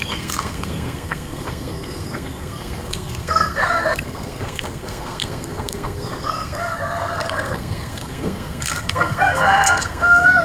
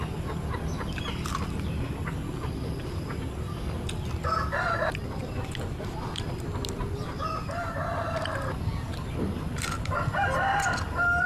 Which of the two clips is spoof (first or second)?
first